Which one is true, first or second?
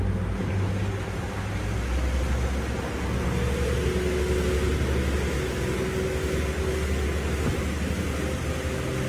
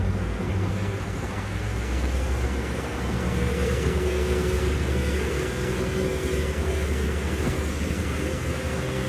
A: first